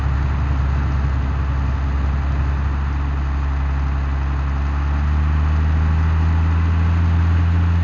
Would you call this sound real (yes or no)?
yes